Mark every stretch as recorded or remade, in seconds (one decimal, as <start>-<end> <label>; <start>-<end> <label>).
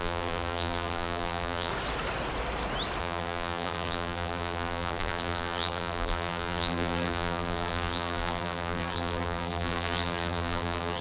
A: 0.0-1.7 remade; 1.7-3.0 recorded; 3.0-11.0 remade